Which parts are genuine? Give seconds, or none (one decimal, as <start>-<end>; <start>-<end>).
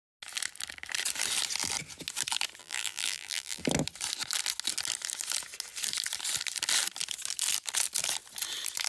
0.0-2.6; 3.6-8.9